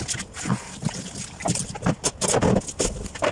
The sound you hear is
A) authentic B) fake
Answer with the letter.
A